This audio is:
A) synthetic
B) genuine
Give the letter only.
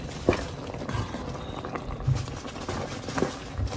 B